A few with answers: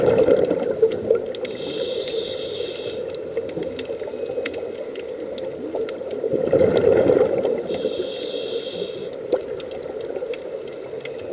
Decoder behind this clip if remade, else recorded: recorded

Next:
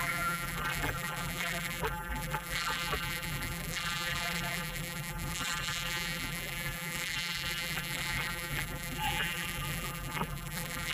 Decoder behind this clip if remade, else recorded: remade, vocoder, BigVGAN v2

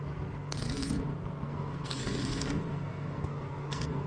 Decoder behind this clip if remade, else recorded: remade, codec, SNAC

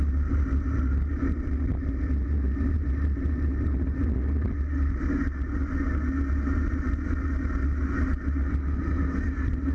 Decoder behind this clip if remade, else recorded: recorded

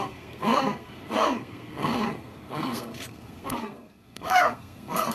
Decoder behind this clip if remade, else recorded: remade, codec, SNAC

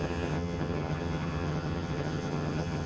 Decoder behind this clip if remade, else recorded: remade, vocoder, HiFi-GAN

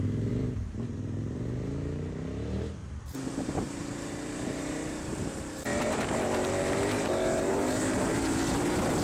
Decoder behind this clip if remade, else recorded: remade, vocoder, BigVGAN v2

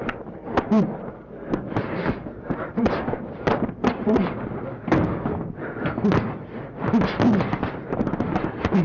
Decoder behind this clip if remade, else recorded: recorded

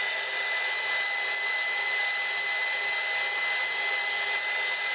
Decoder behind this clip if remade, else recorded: recorded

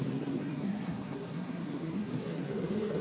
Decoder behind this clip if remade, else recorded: remade, codec, SNAC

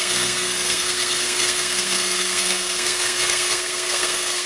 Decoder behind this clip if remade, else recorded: remade, codec, SNAC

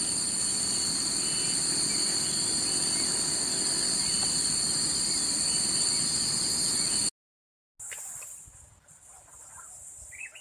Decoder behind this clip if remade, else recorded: recorded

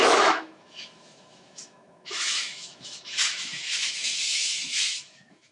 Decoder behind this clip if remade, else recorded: remade, autoencoder, DAC-VAE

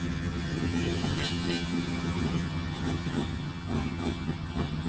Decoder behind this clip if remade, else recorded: remade, vocoder, HiFi-GAN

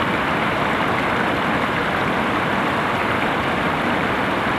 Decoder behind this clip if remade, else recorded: recorded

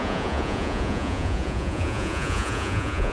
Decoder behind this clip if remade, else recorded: remade, vocoder, Vocos